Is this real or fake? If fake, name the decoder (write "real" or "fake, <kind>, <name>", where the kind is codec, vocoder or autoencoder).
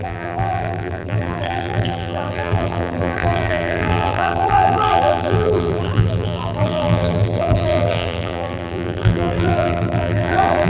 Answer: fake, vocoder, BigVGAN v2